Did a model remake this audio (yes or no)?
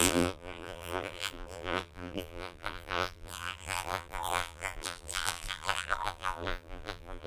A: yes